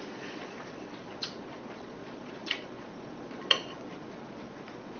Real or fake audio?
fake